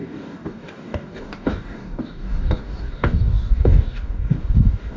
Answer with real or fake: fake